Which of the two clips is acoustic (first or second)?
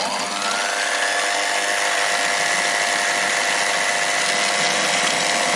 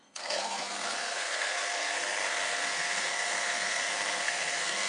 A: first